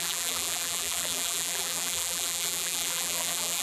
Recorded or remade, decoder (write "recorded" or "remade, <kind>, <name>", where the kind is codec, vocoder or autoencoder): remade, vocoder, BigVGAN v2